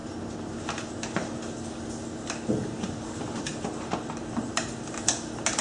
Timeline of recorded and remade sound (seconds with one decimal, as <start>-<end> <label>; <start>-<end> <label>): 0.0-5.6 recorded